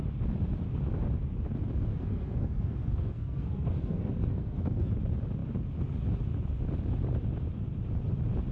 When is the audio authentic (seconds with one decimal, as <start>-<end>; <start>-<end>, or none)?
0.0-1.9; 4.9-8.5